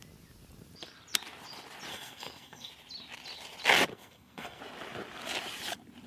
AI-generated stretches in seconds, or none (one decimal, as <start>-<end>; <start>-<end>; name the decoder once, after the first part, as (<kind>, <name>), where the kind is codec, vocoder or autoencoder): 1.9-2.7 (codec, SNAC); 3.9-4.6

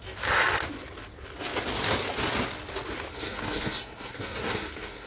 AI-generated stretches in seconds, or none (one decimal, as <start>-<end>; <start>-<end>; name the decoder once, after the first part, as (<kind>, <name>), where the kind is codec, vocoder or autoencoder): 3.1-5.1 (codec, SNAC)

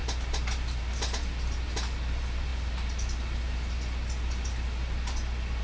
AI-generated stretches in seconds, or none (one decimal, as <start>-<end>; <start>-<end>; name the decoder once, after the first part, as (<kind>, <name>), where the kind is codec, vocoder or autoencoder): none

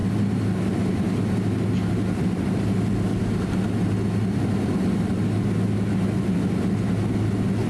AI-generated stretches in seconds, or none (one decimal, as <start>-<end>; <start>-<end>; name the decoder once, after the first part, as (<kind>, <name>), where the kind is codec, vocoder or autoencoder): none

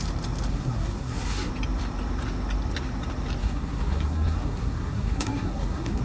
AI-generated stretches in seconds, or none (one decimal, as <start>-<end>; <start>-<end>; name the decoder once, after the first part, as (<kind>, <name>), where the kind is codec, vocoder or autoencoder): 0.5-1.5 (codec, SNAC); 3.4-6.0